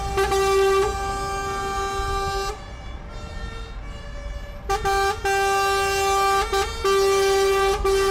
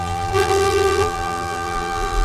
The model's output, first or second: second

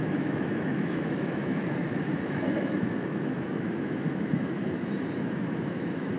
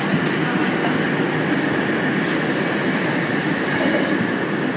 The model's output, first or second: first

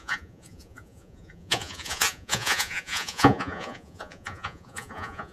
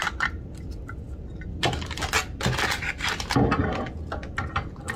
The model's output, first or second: first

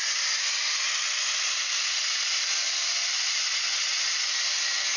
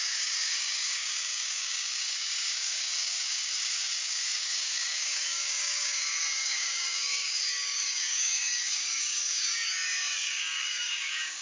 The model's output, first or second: second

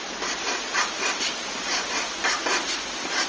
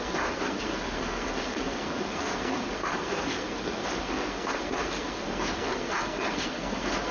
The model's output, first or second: second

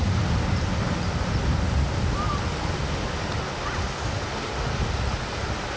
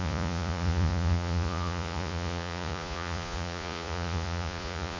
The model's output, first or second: second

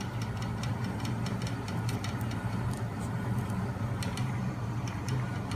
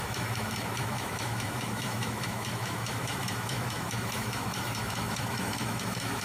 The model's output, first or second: second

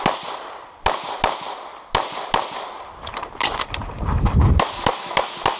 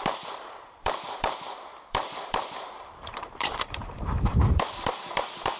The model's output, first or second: second